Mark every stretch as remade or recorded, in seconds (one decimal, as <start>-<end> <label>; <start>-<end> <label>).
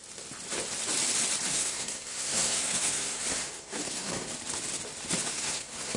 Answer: 0.0-1.5 recorded; 1.5-4.3 remade; 4.3-5.3 recorded; 5.3-6.0 remade